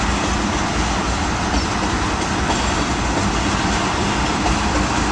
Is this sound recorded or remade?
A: recorded